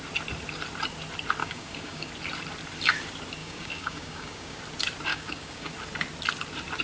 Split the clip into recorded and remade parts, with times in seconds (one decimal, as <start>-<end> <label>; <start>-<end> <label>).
0.0-1.4 recorded; 1.4-2.1 remade; 2.1-3.4 recorded; 3.4-4.6 remade; 4.6-5.1 recorded; 5.1-5.7 remade; 5.7-6.8 recorded